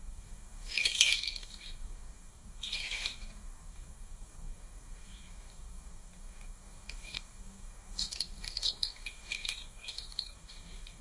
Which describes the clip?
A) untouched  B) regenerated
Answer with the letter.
B